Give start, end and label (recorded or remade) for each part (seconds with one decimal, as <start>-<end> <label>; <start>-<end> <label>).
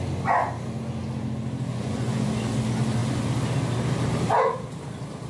0.0-1.7 recorded; 1.7-2.3 remade; 2.3-5.3 recorded